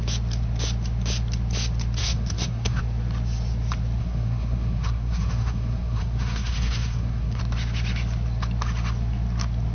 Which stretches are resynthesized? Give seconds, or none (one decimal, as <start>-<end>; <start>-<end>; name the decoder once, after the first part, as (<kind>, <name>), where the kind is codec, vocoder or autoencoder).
2.0-2.8 (codec, SNAC); 4.0-7.4